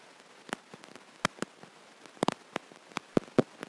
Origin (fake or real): real